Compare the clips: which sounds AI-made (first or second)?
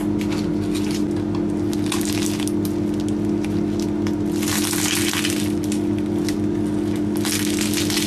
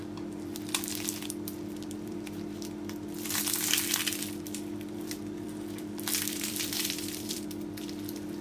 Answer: second